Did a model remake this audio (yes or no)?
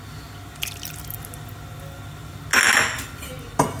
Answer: no